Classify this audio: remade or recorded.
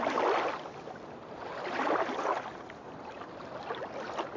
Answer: recorded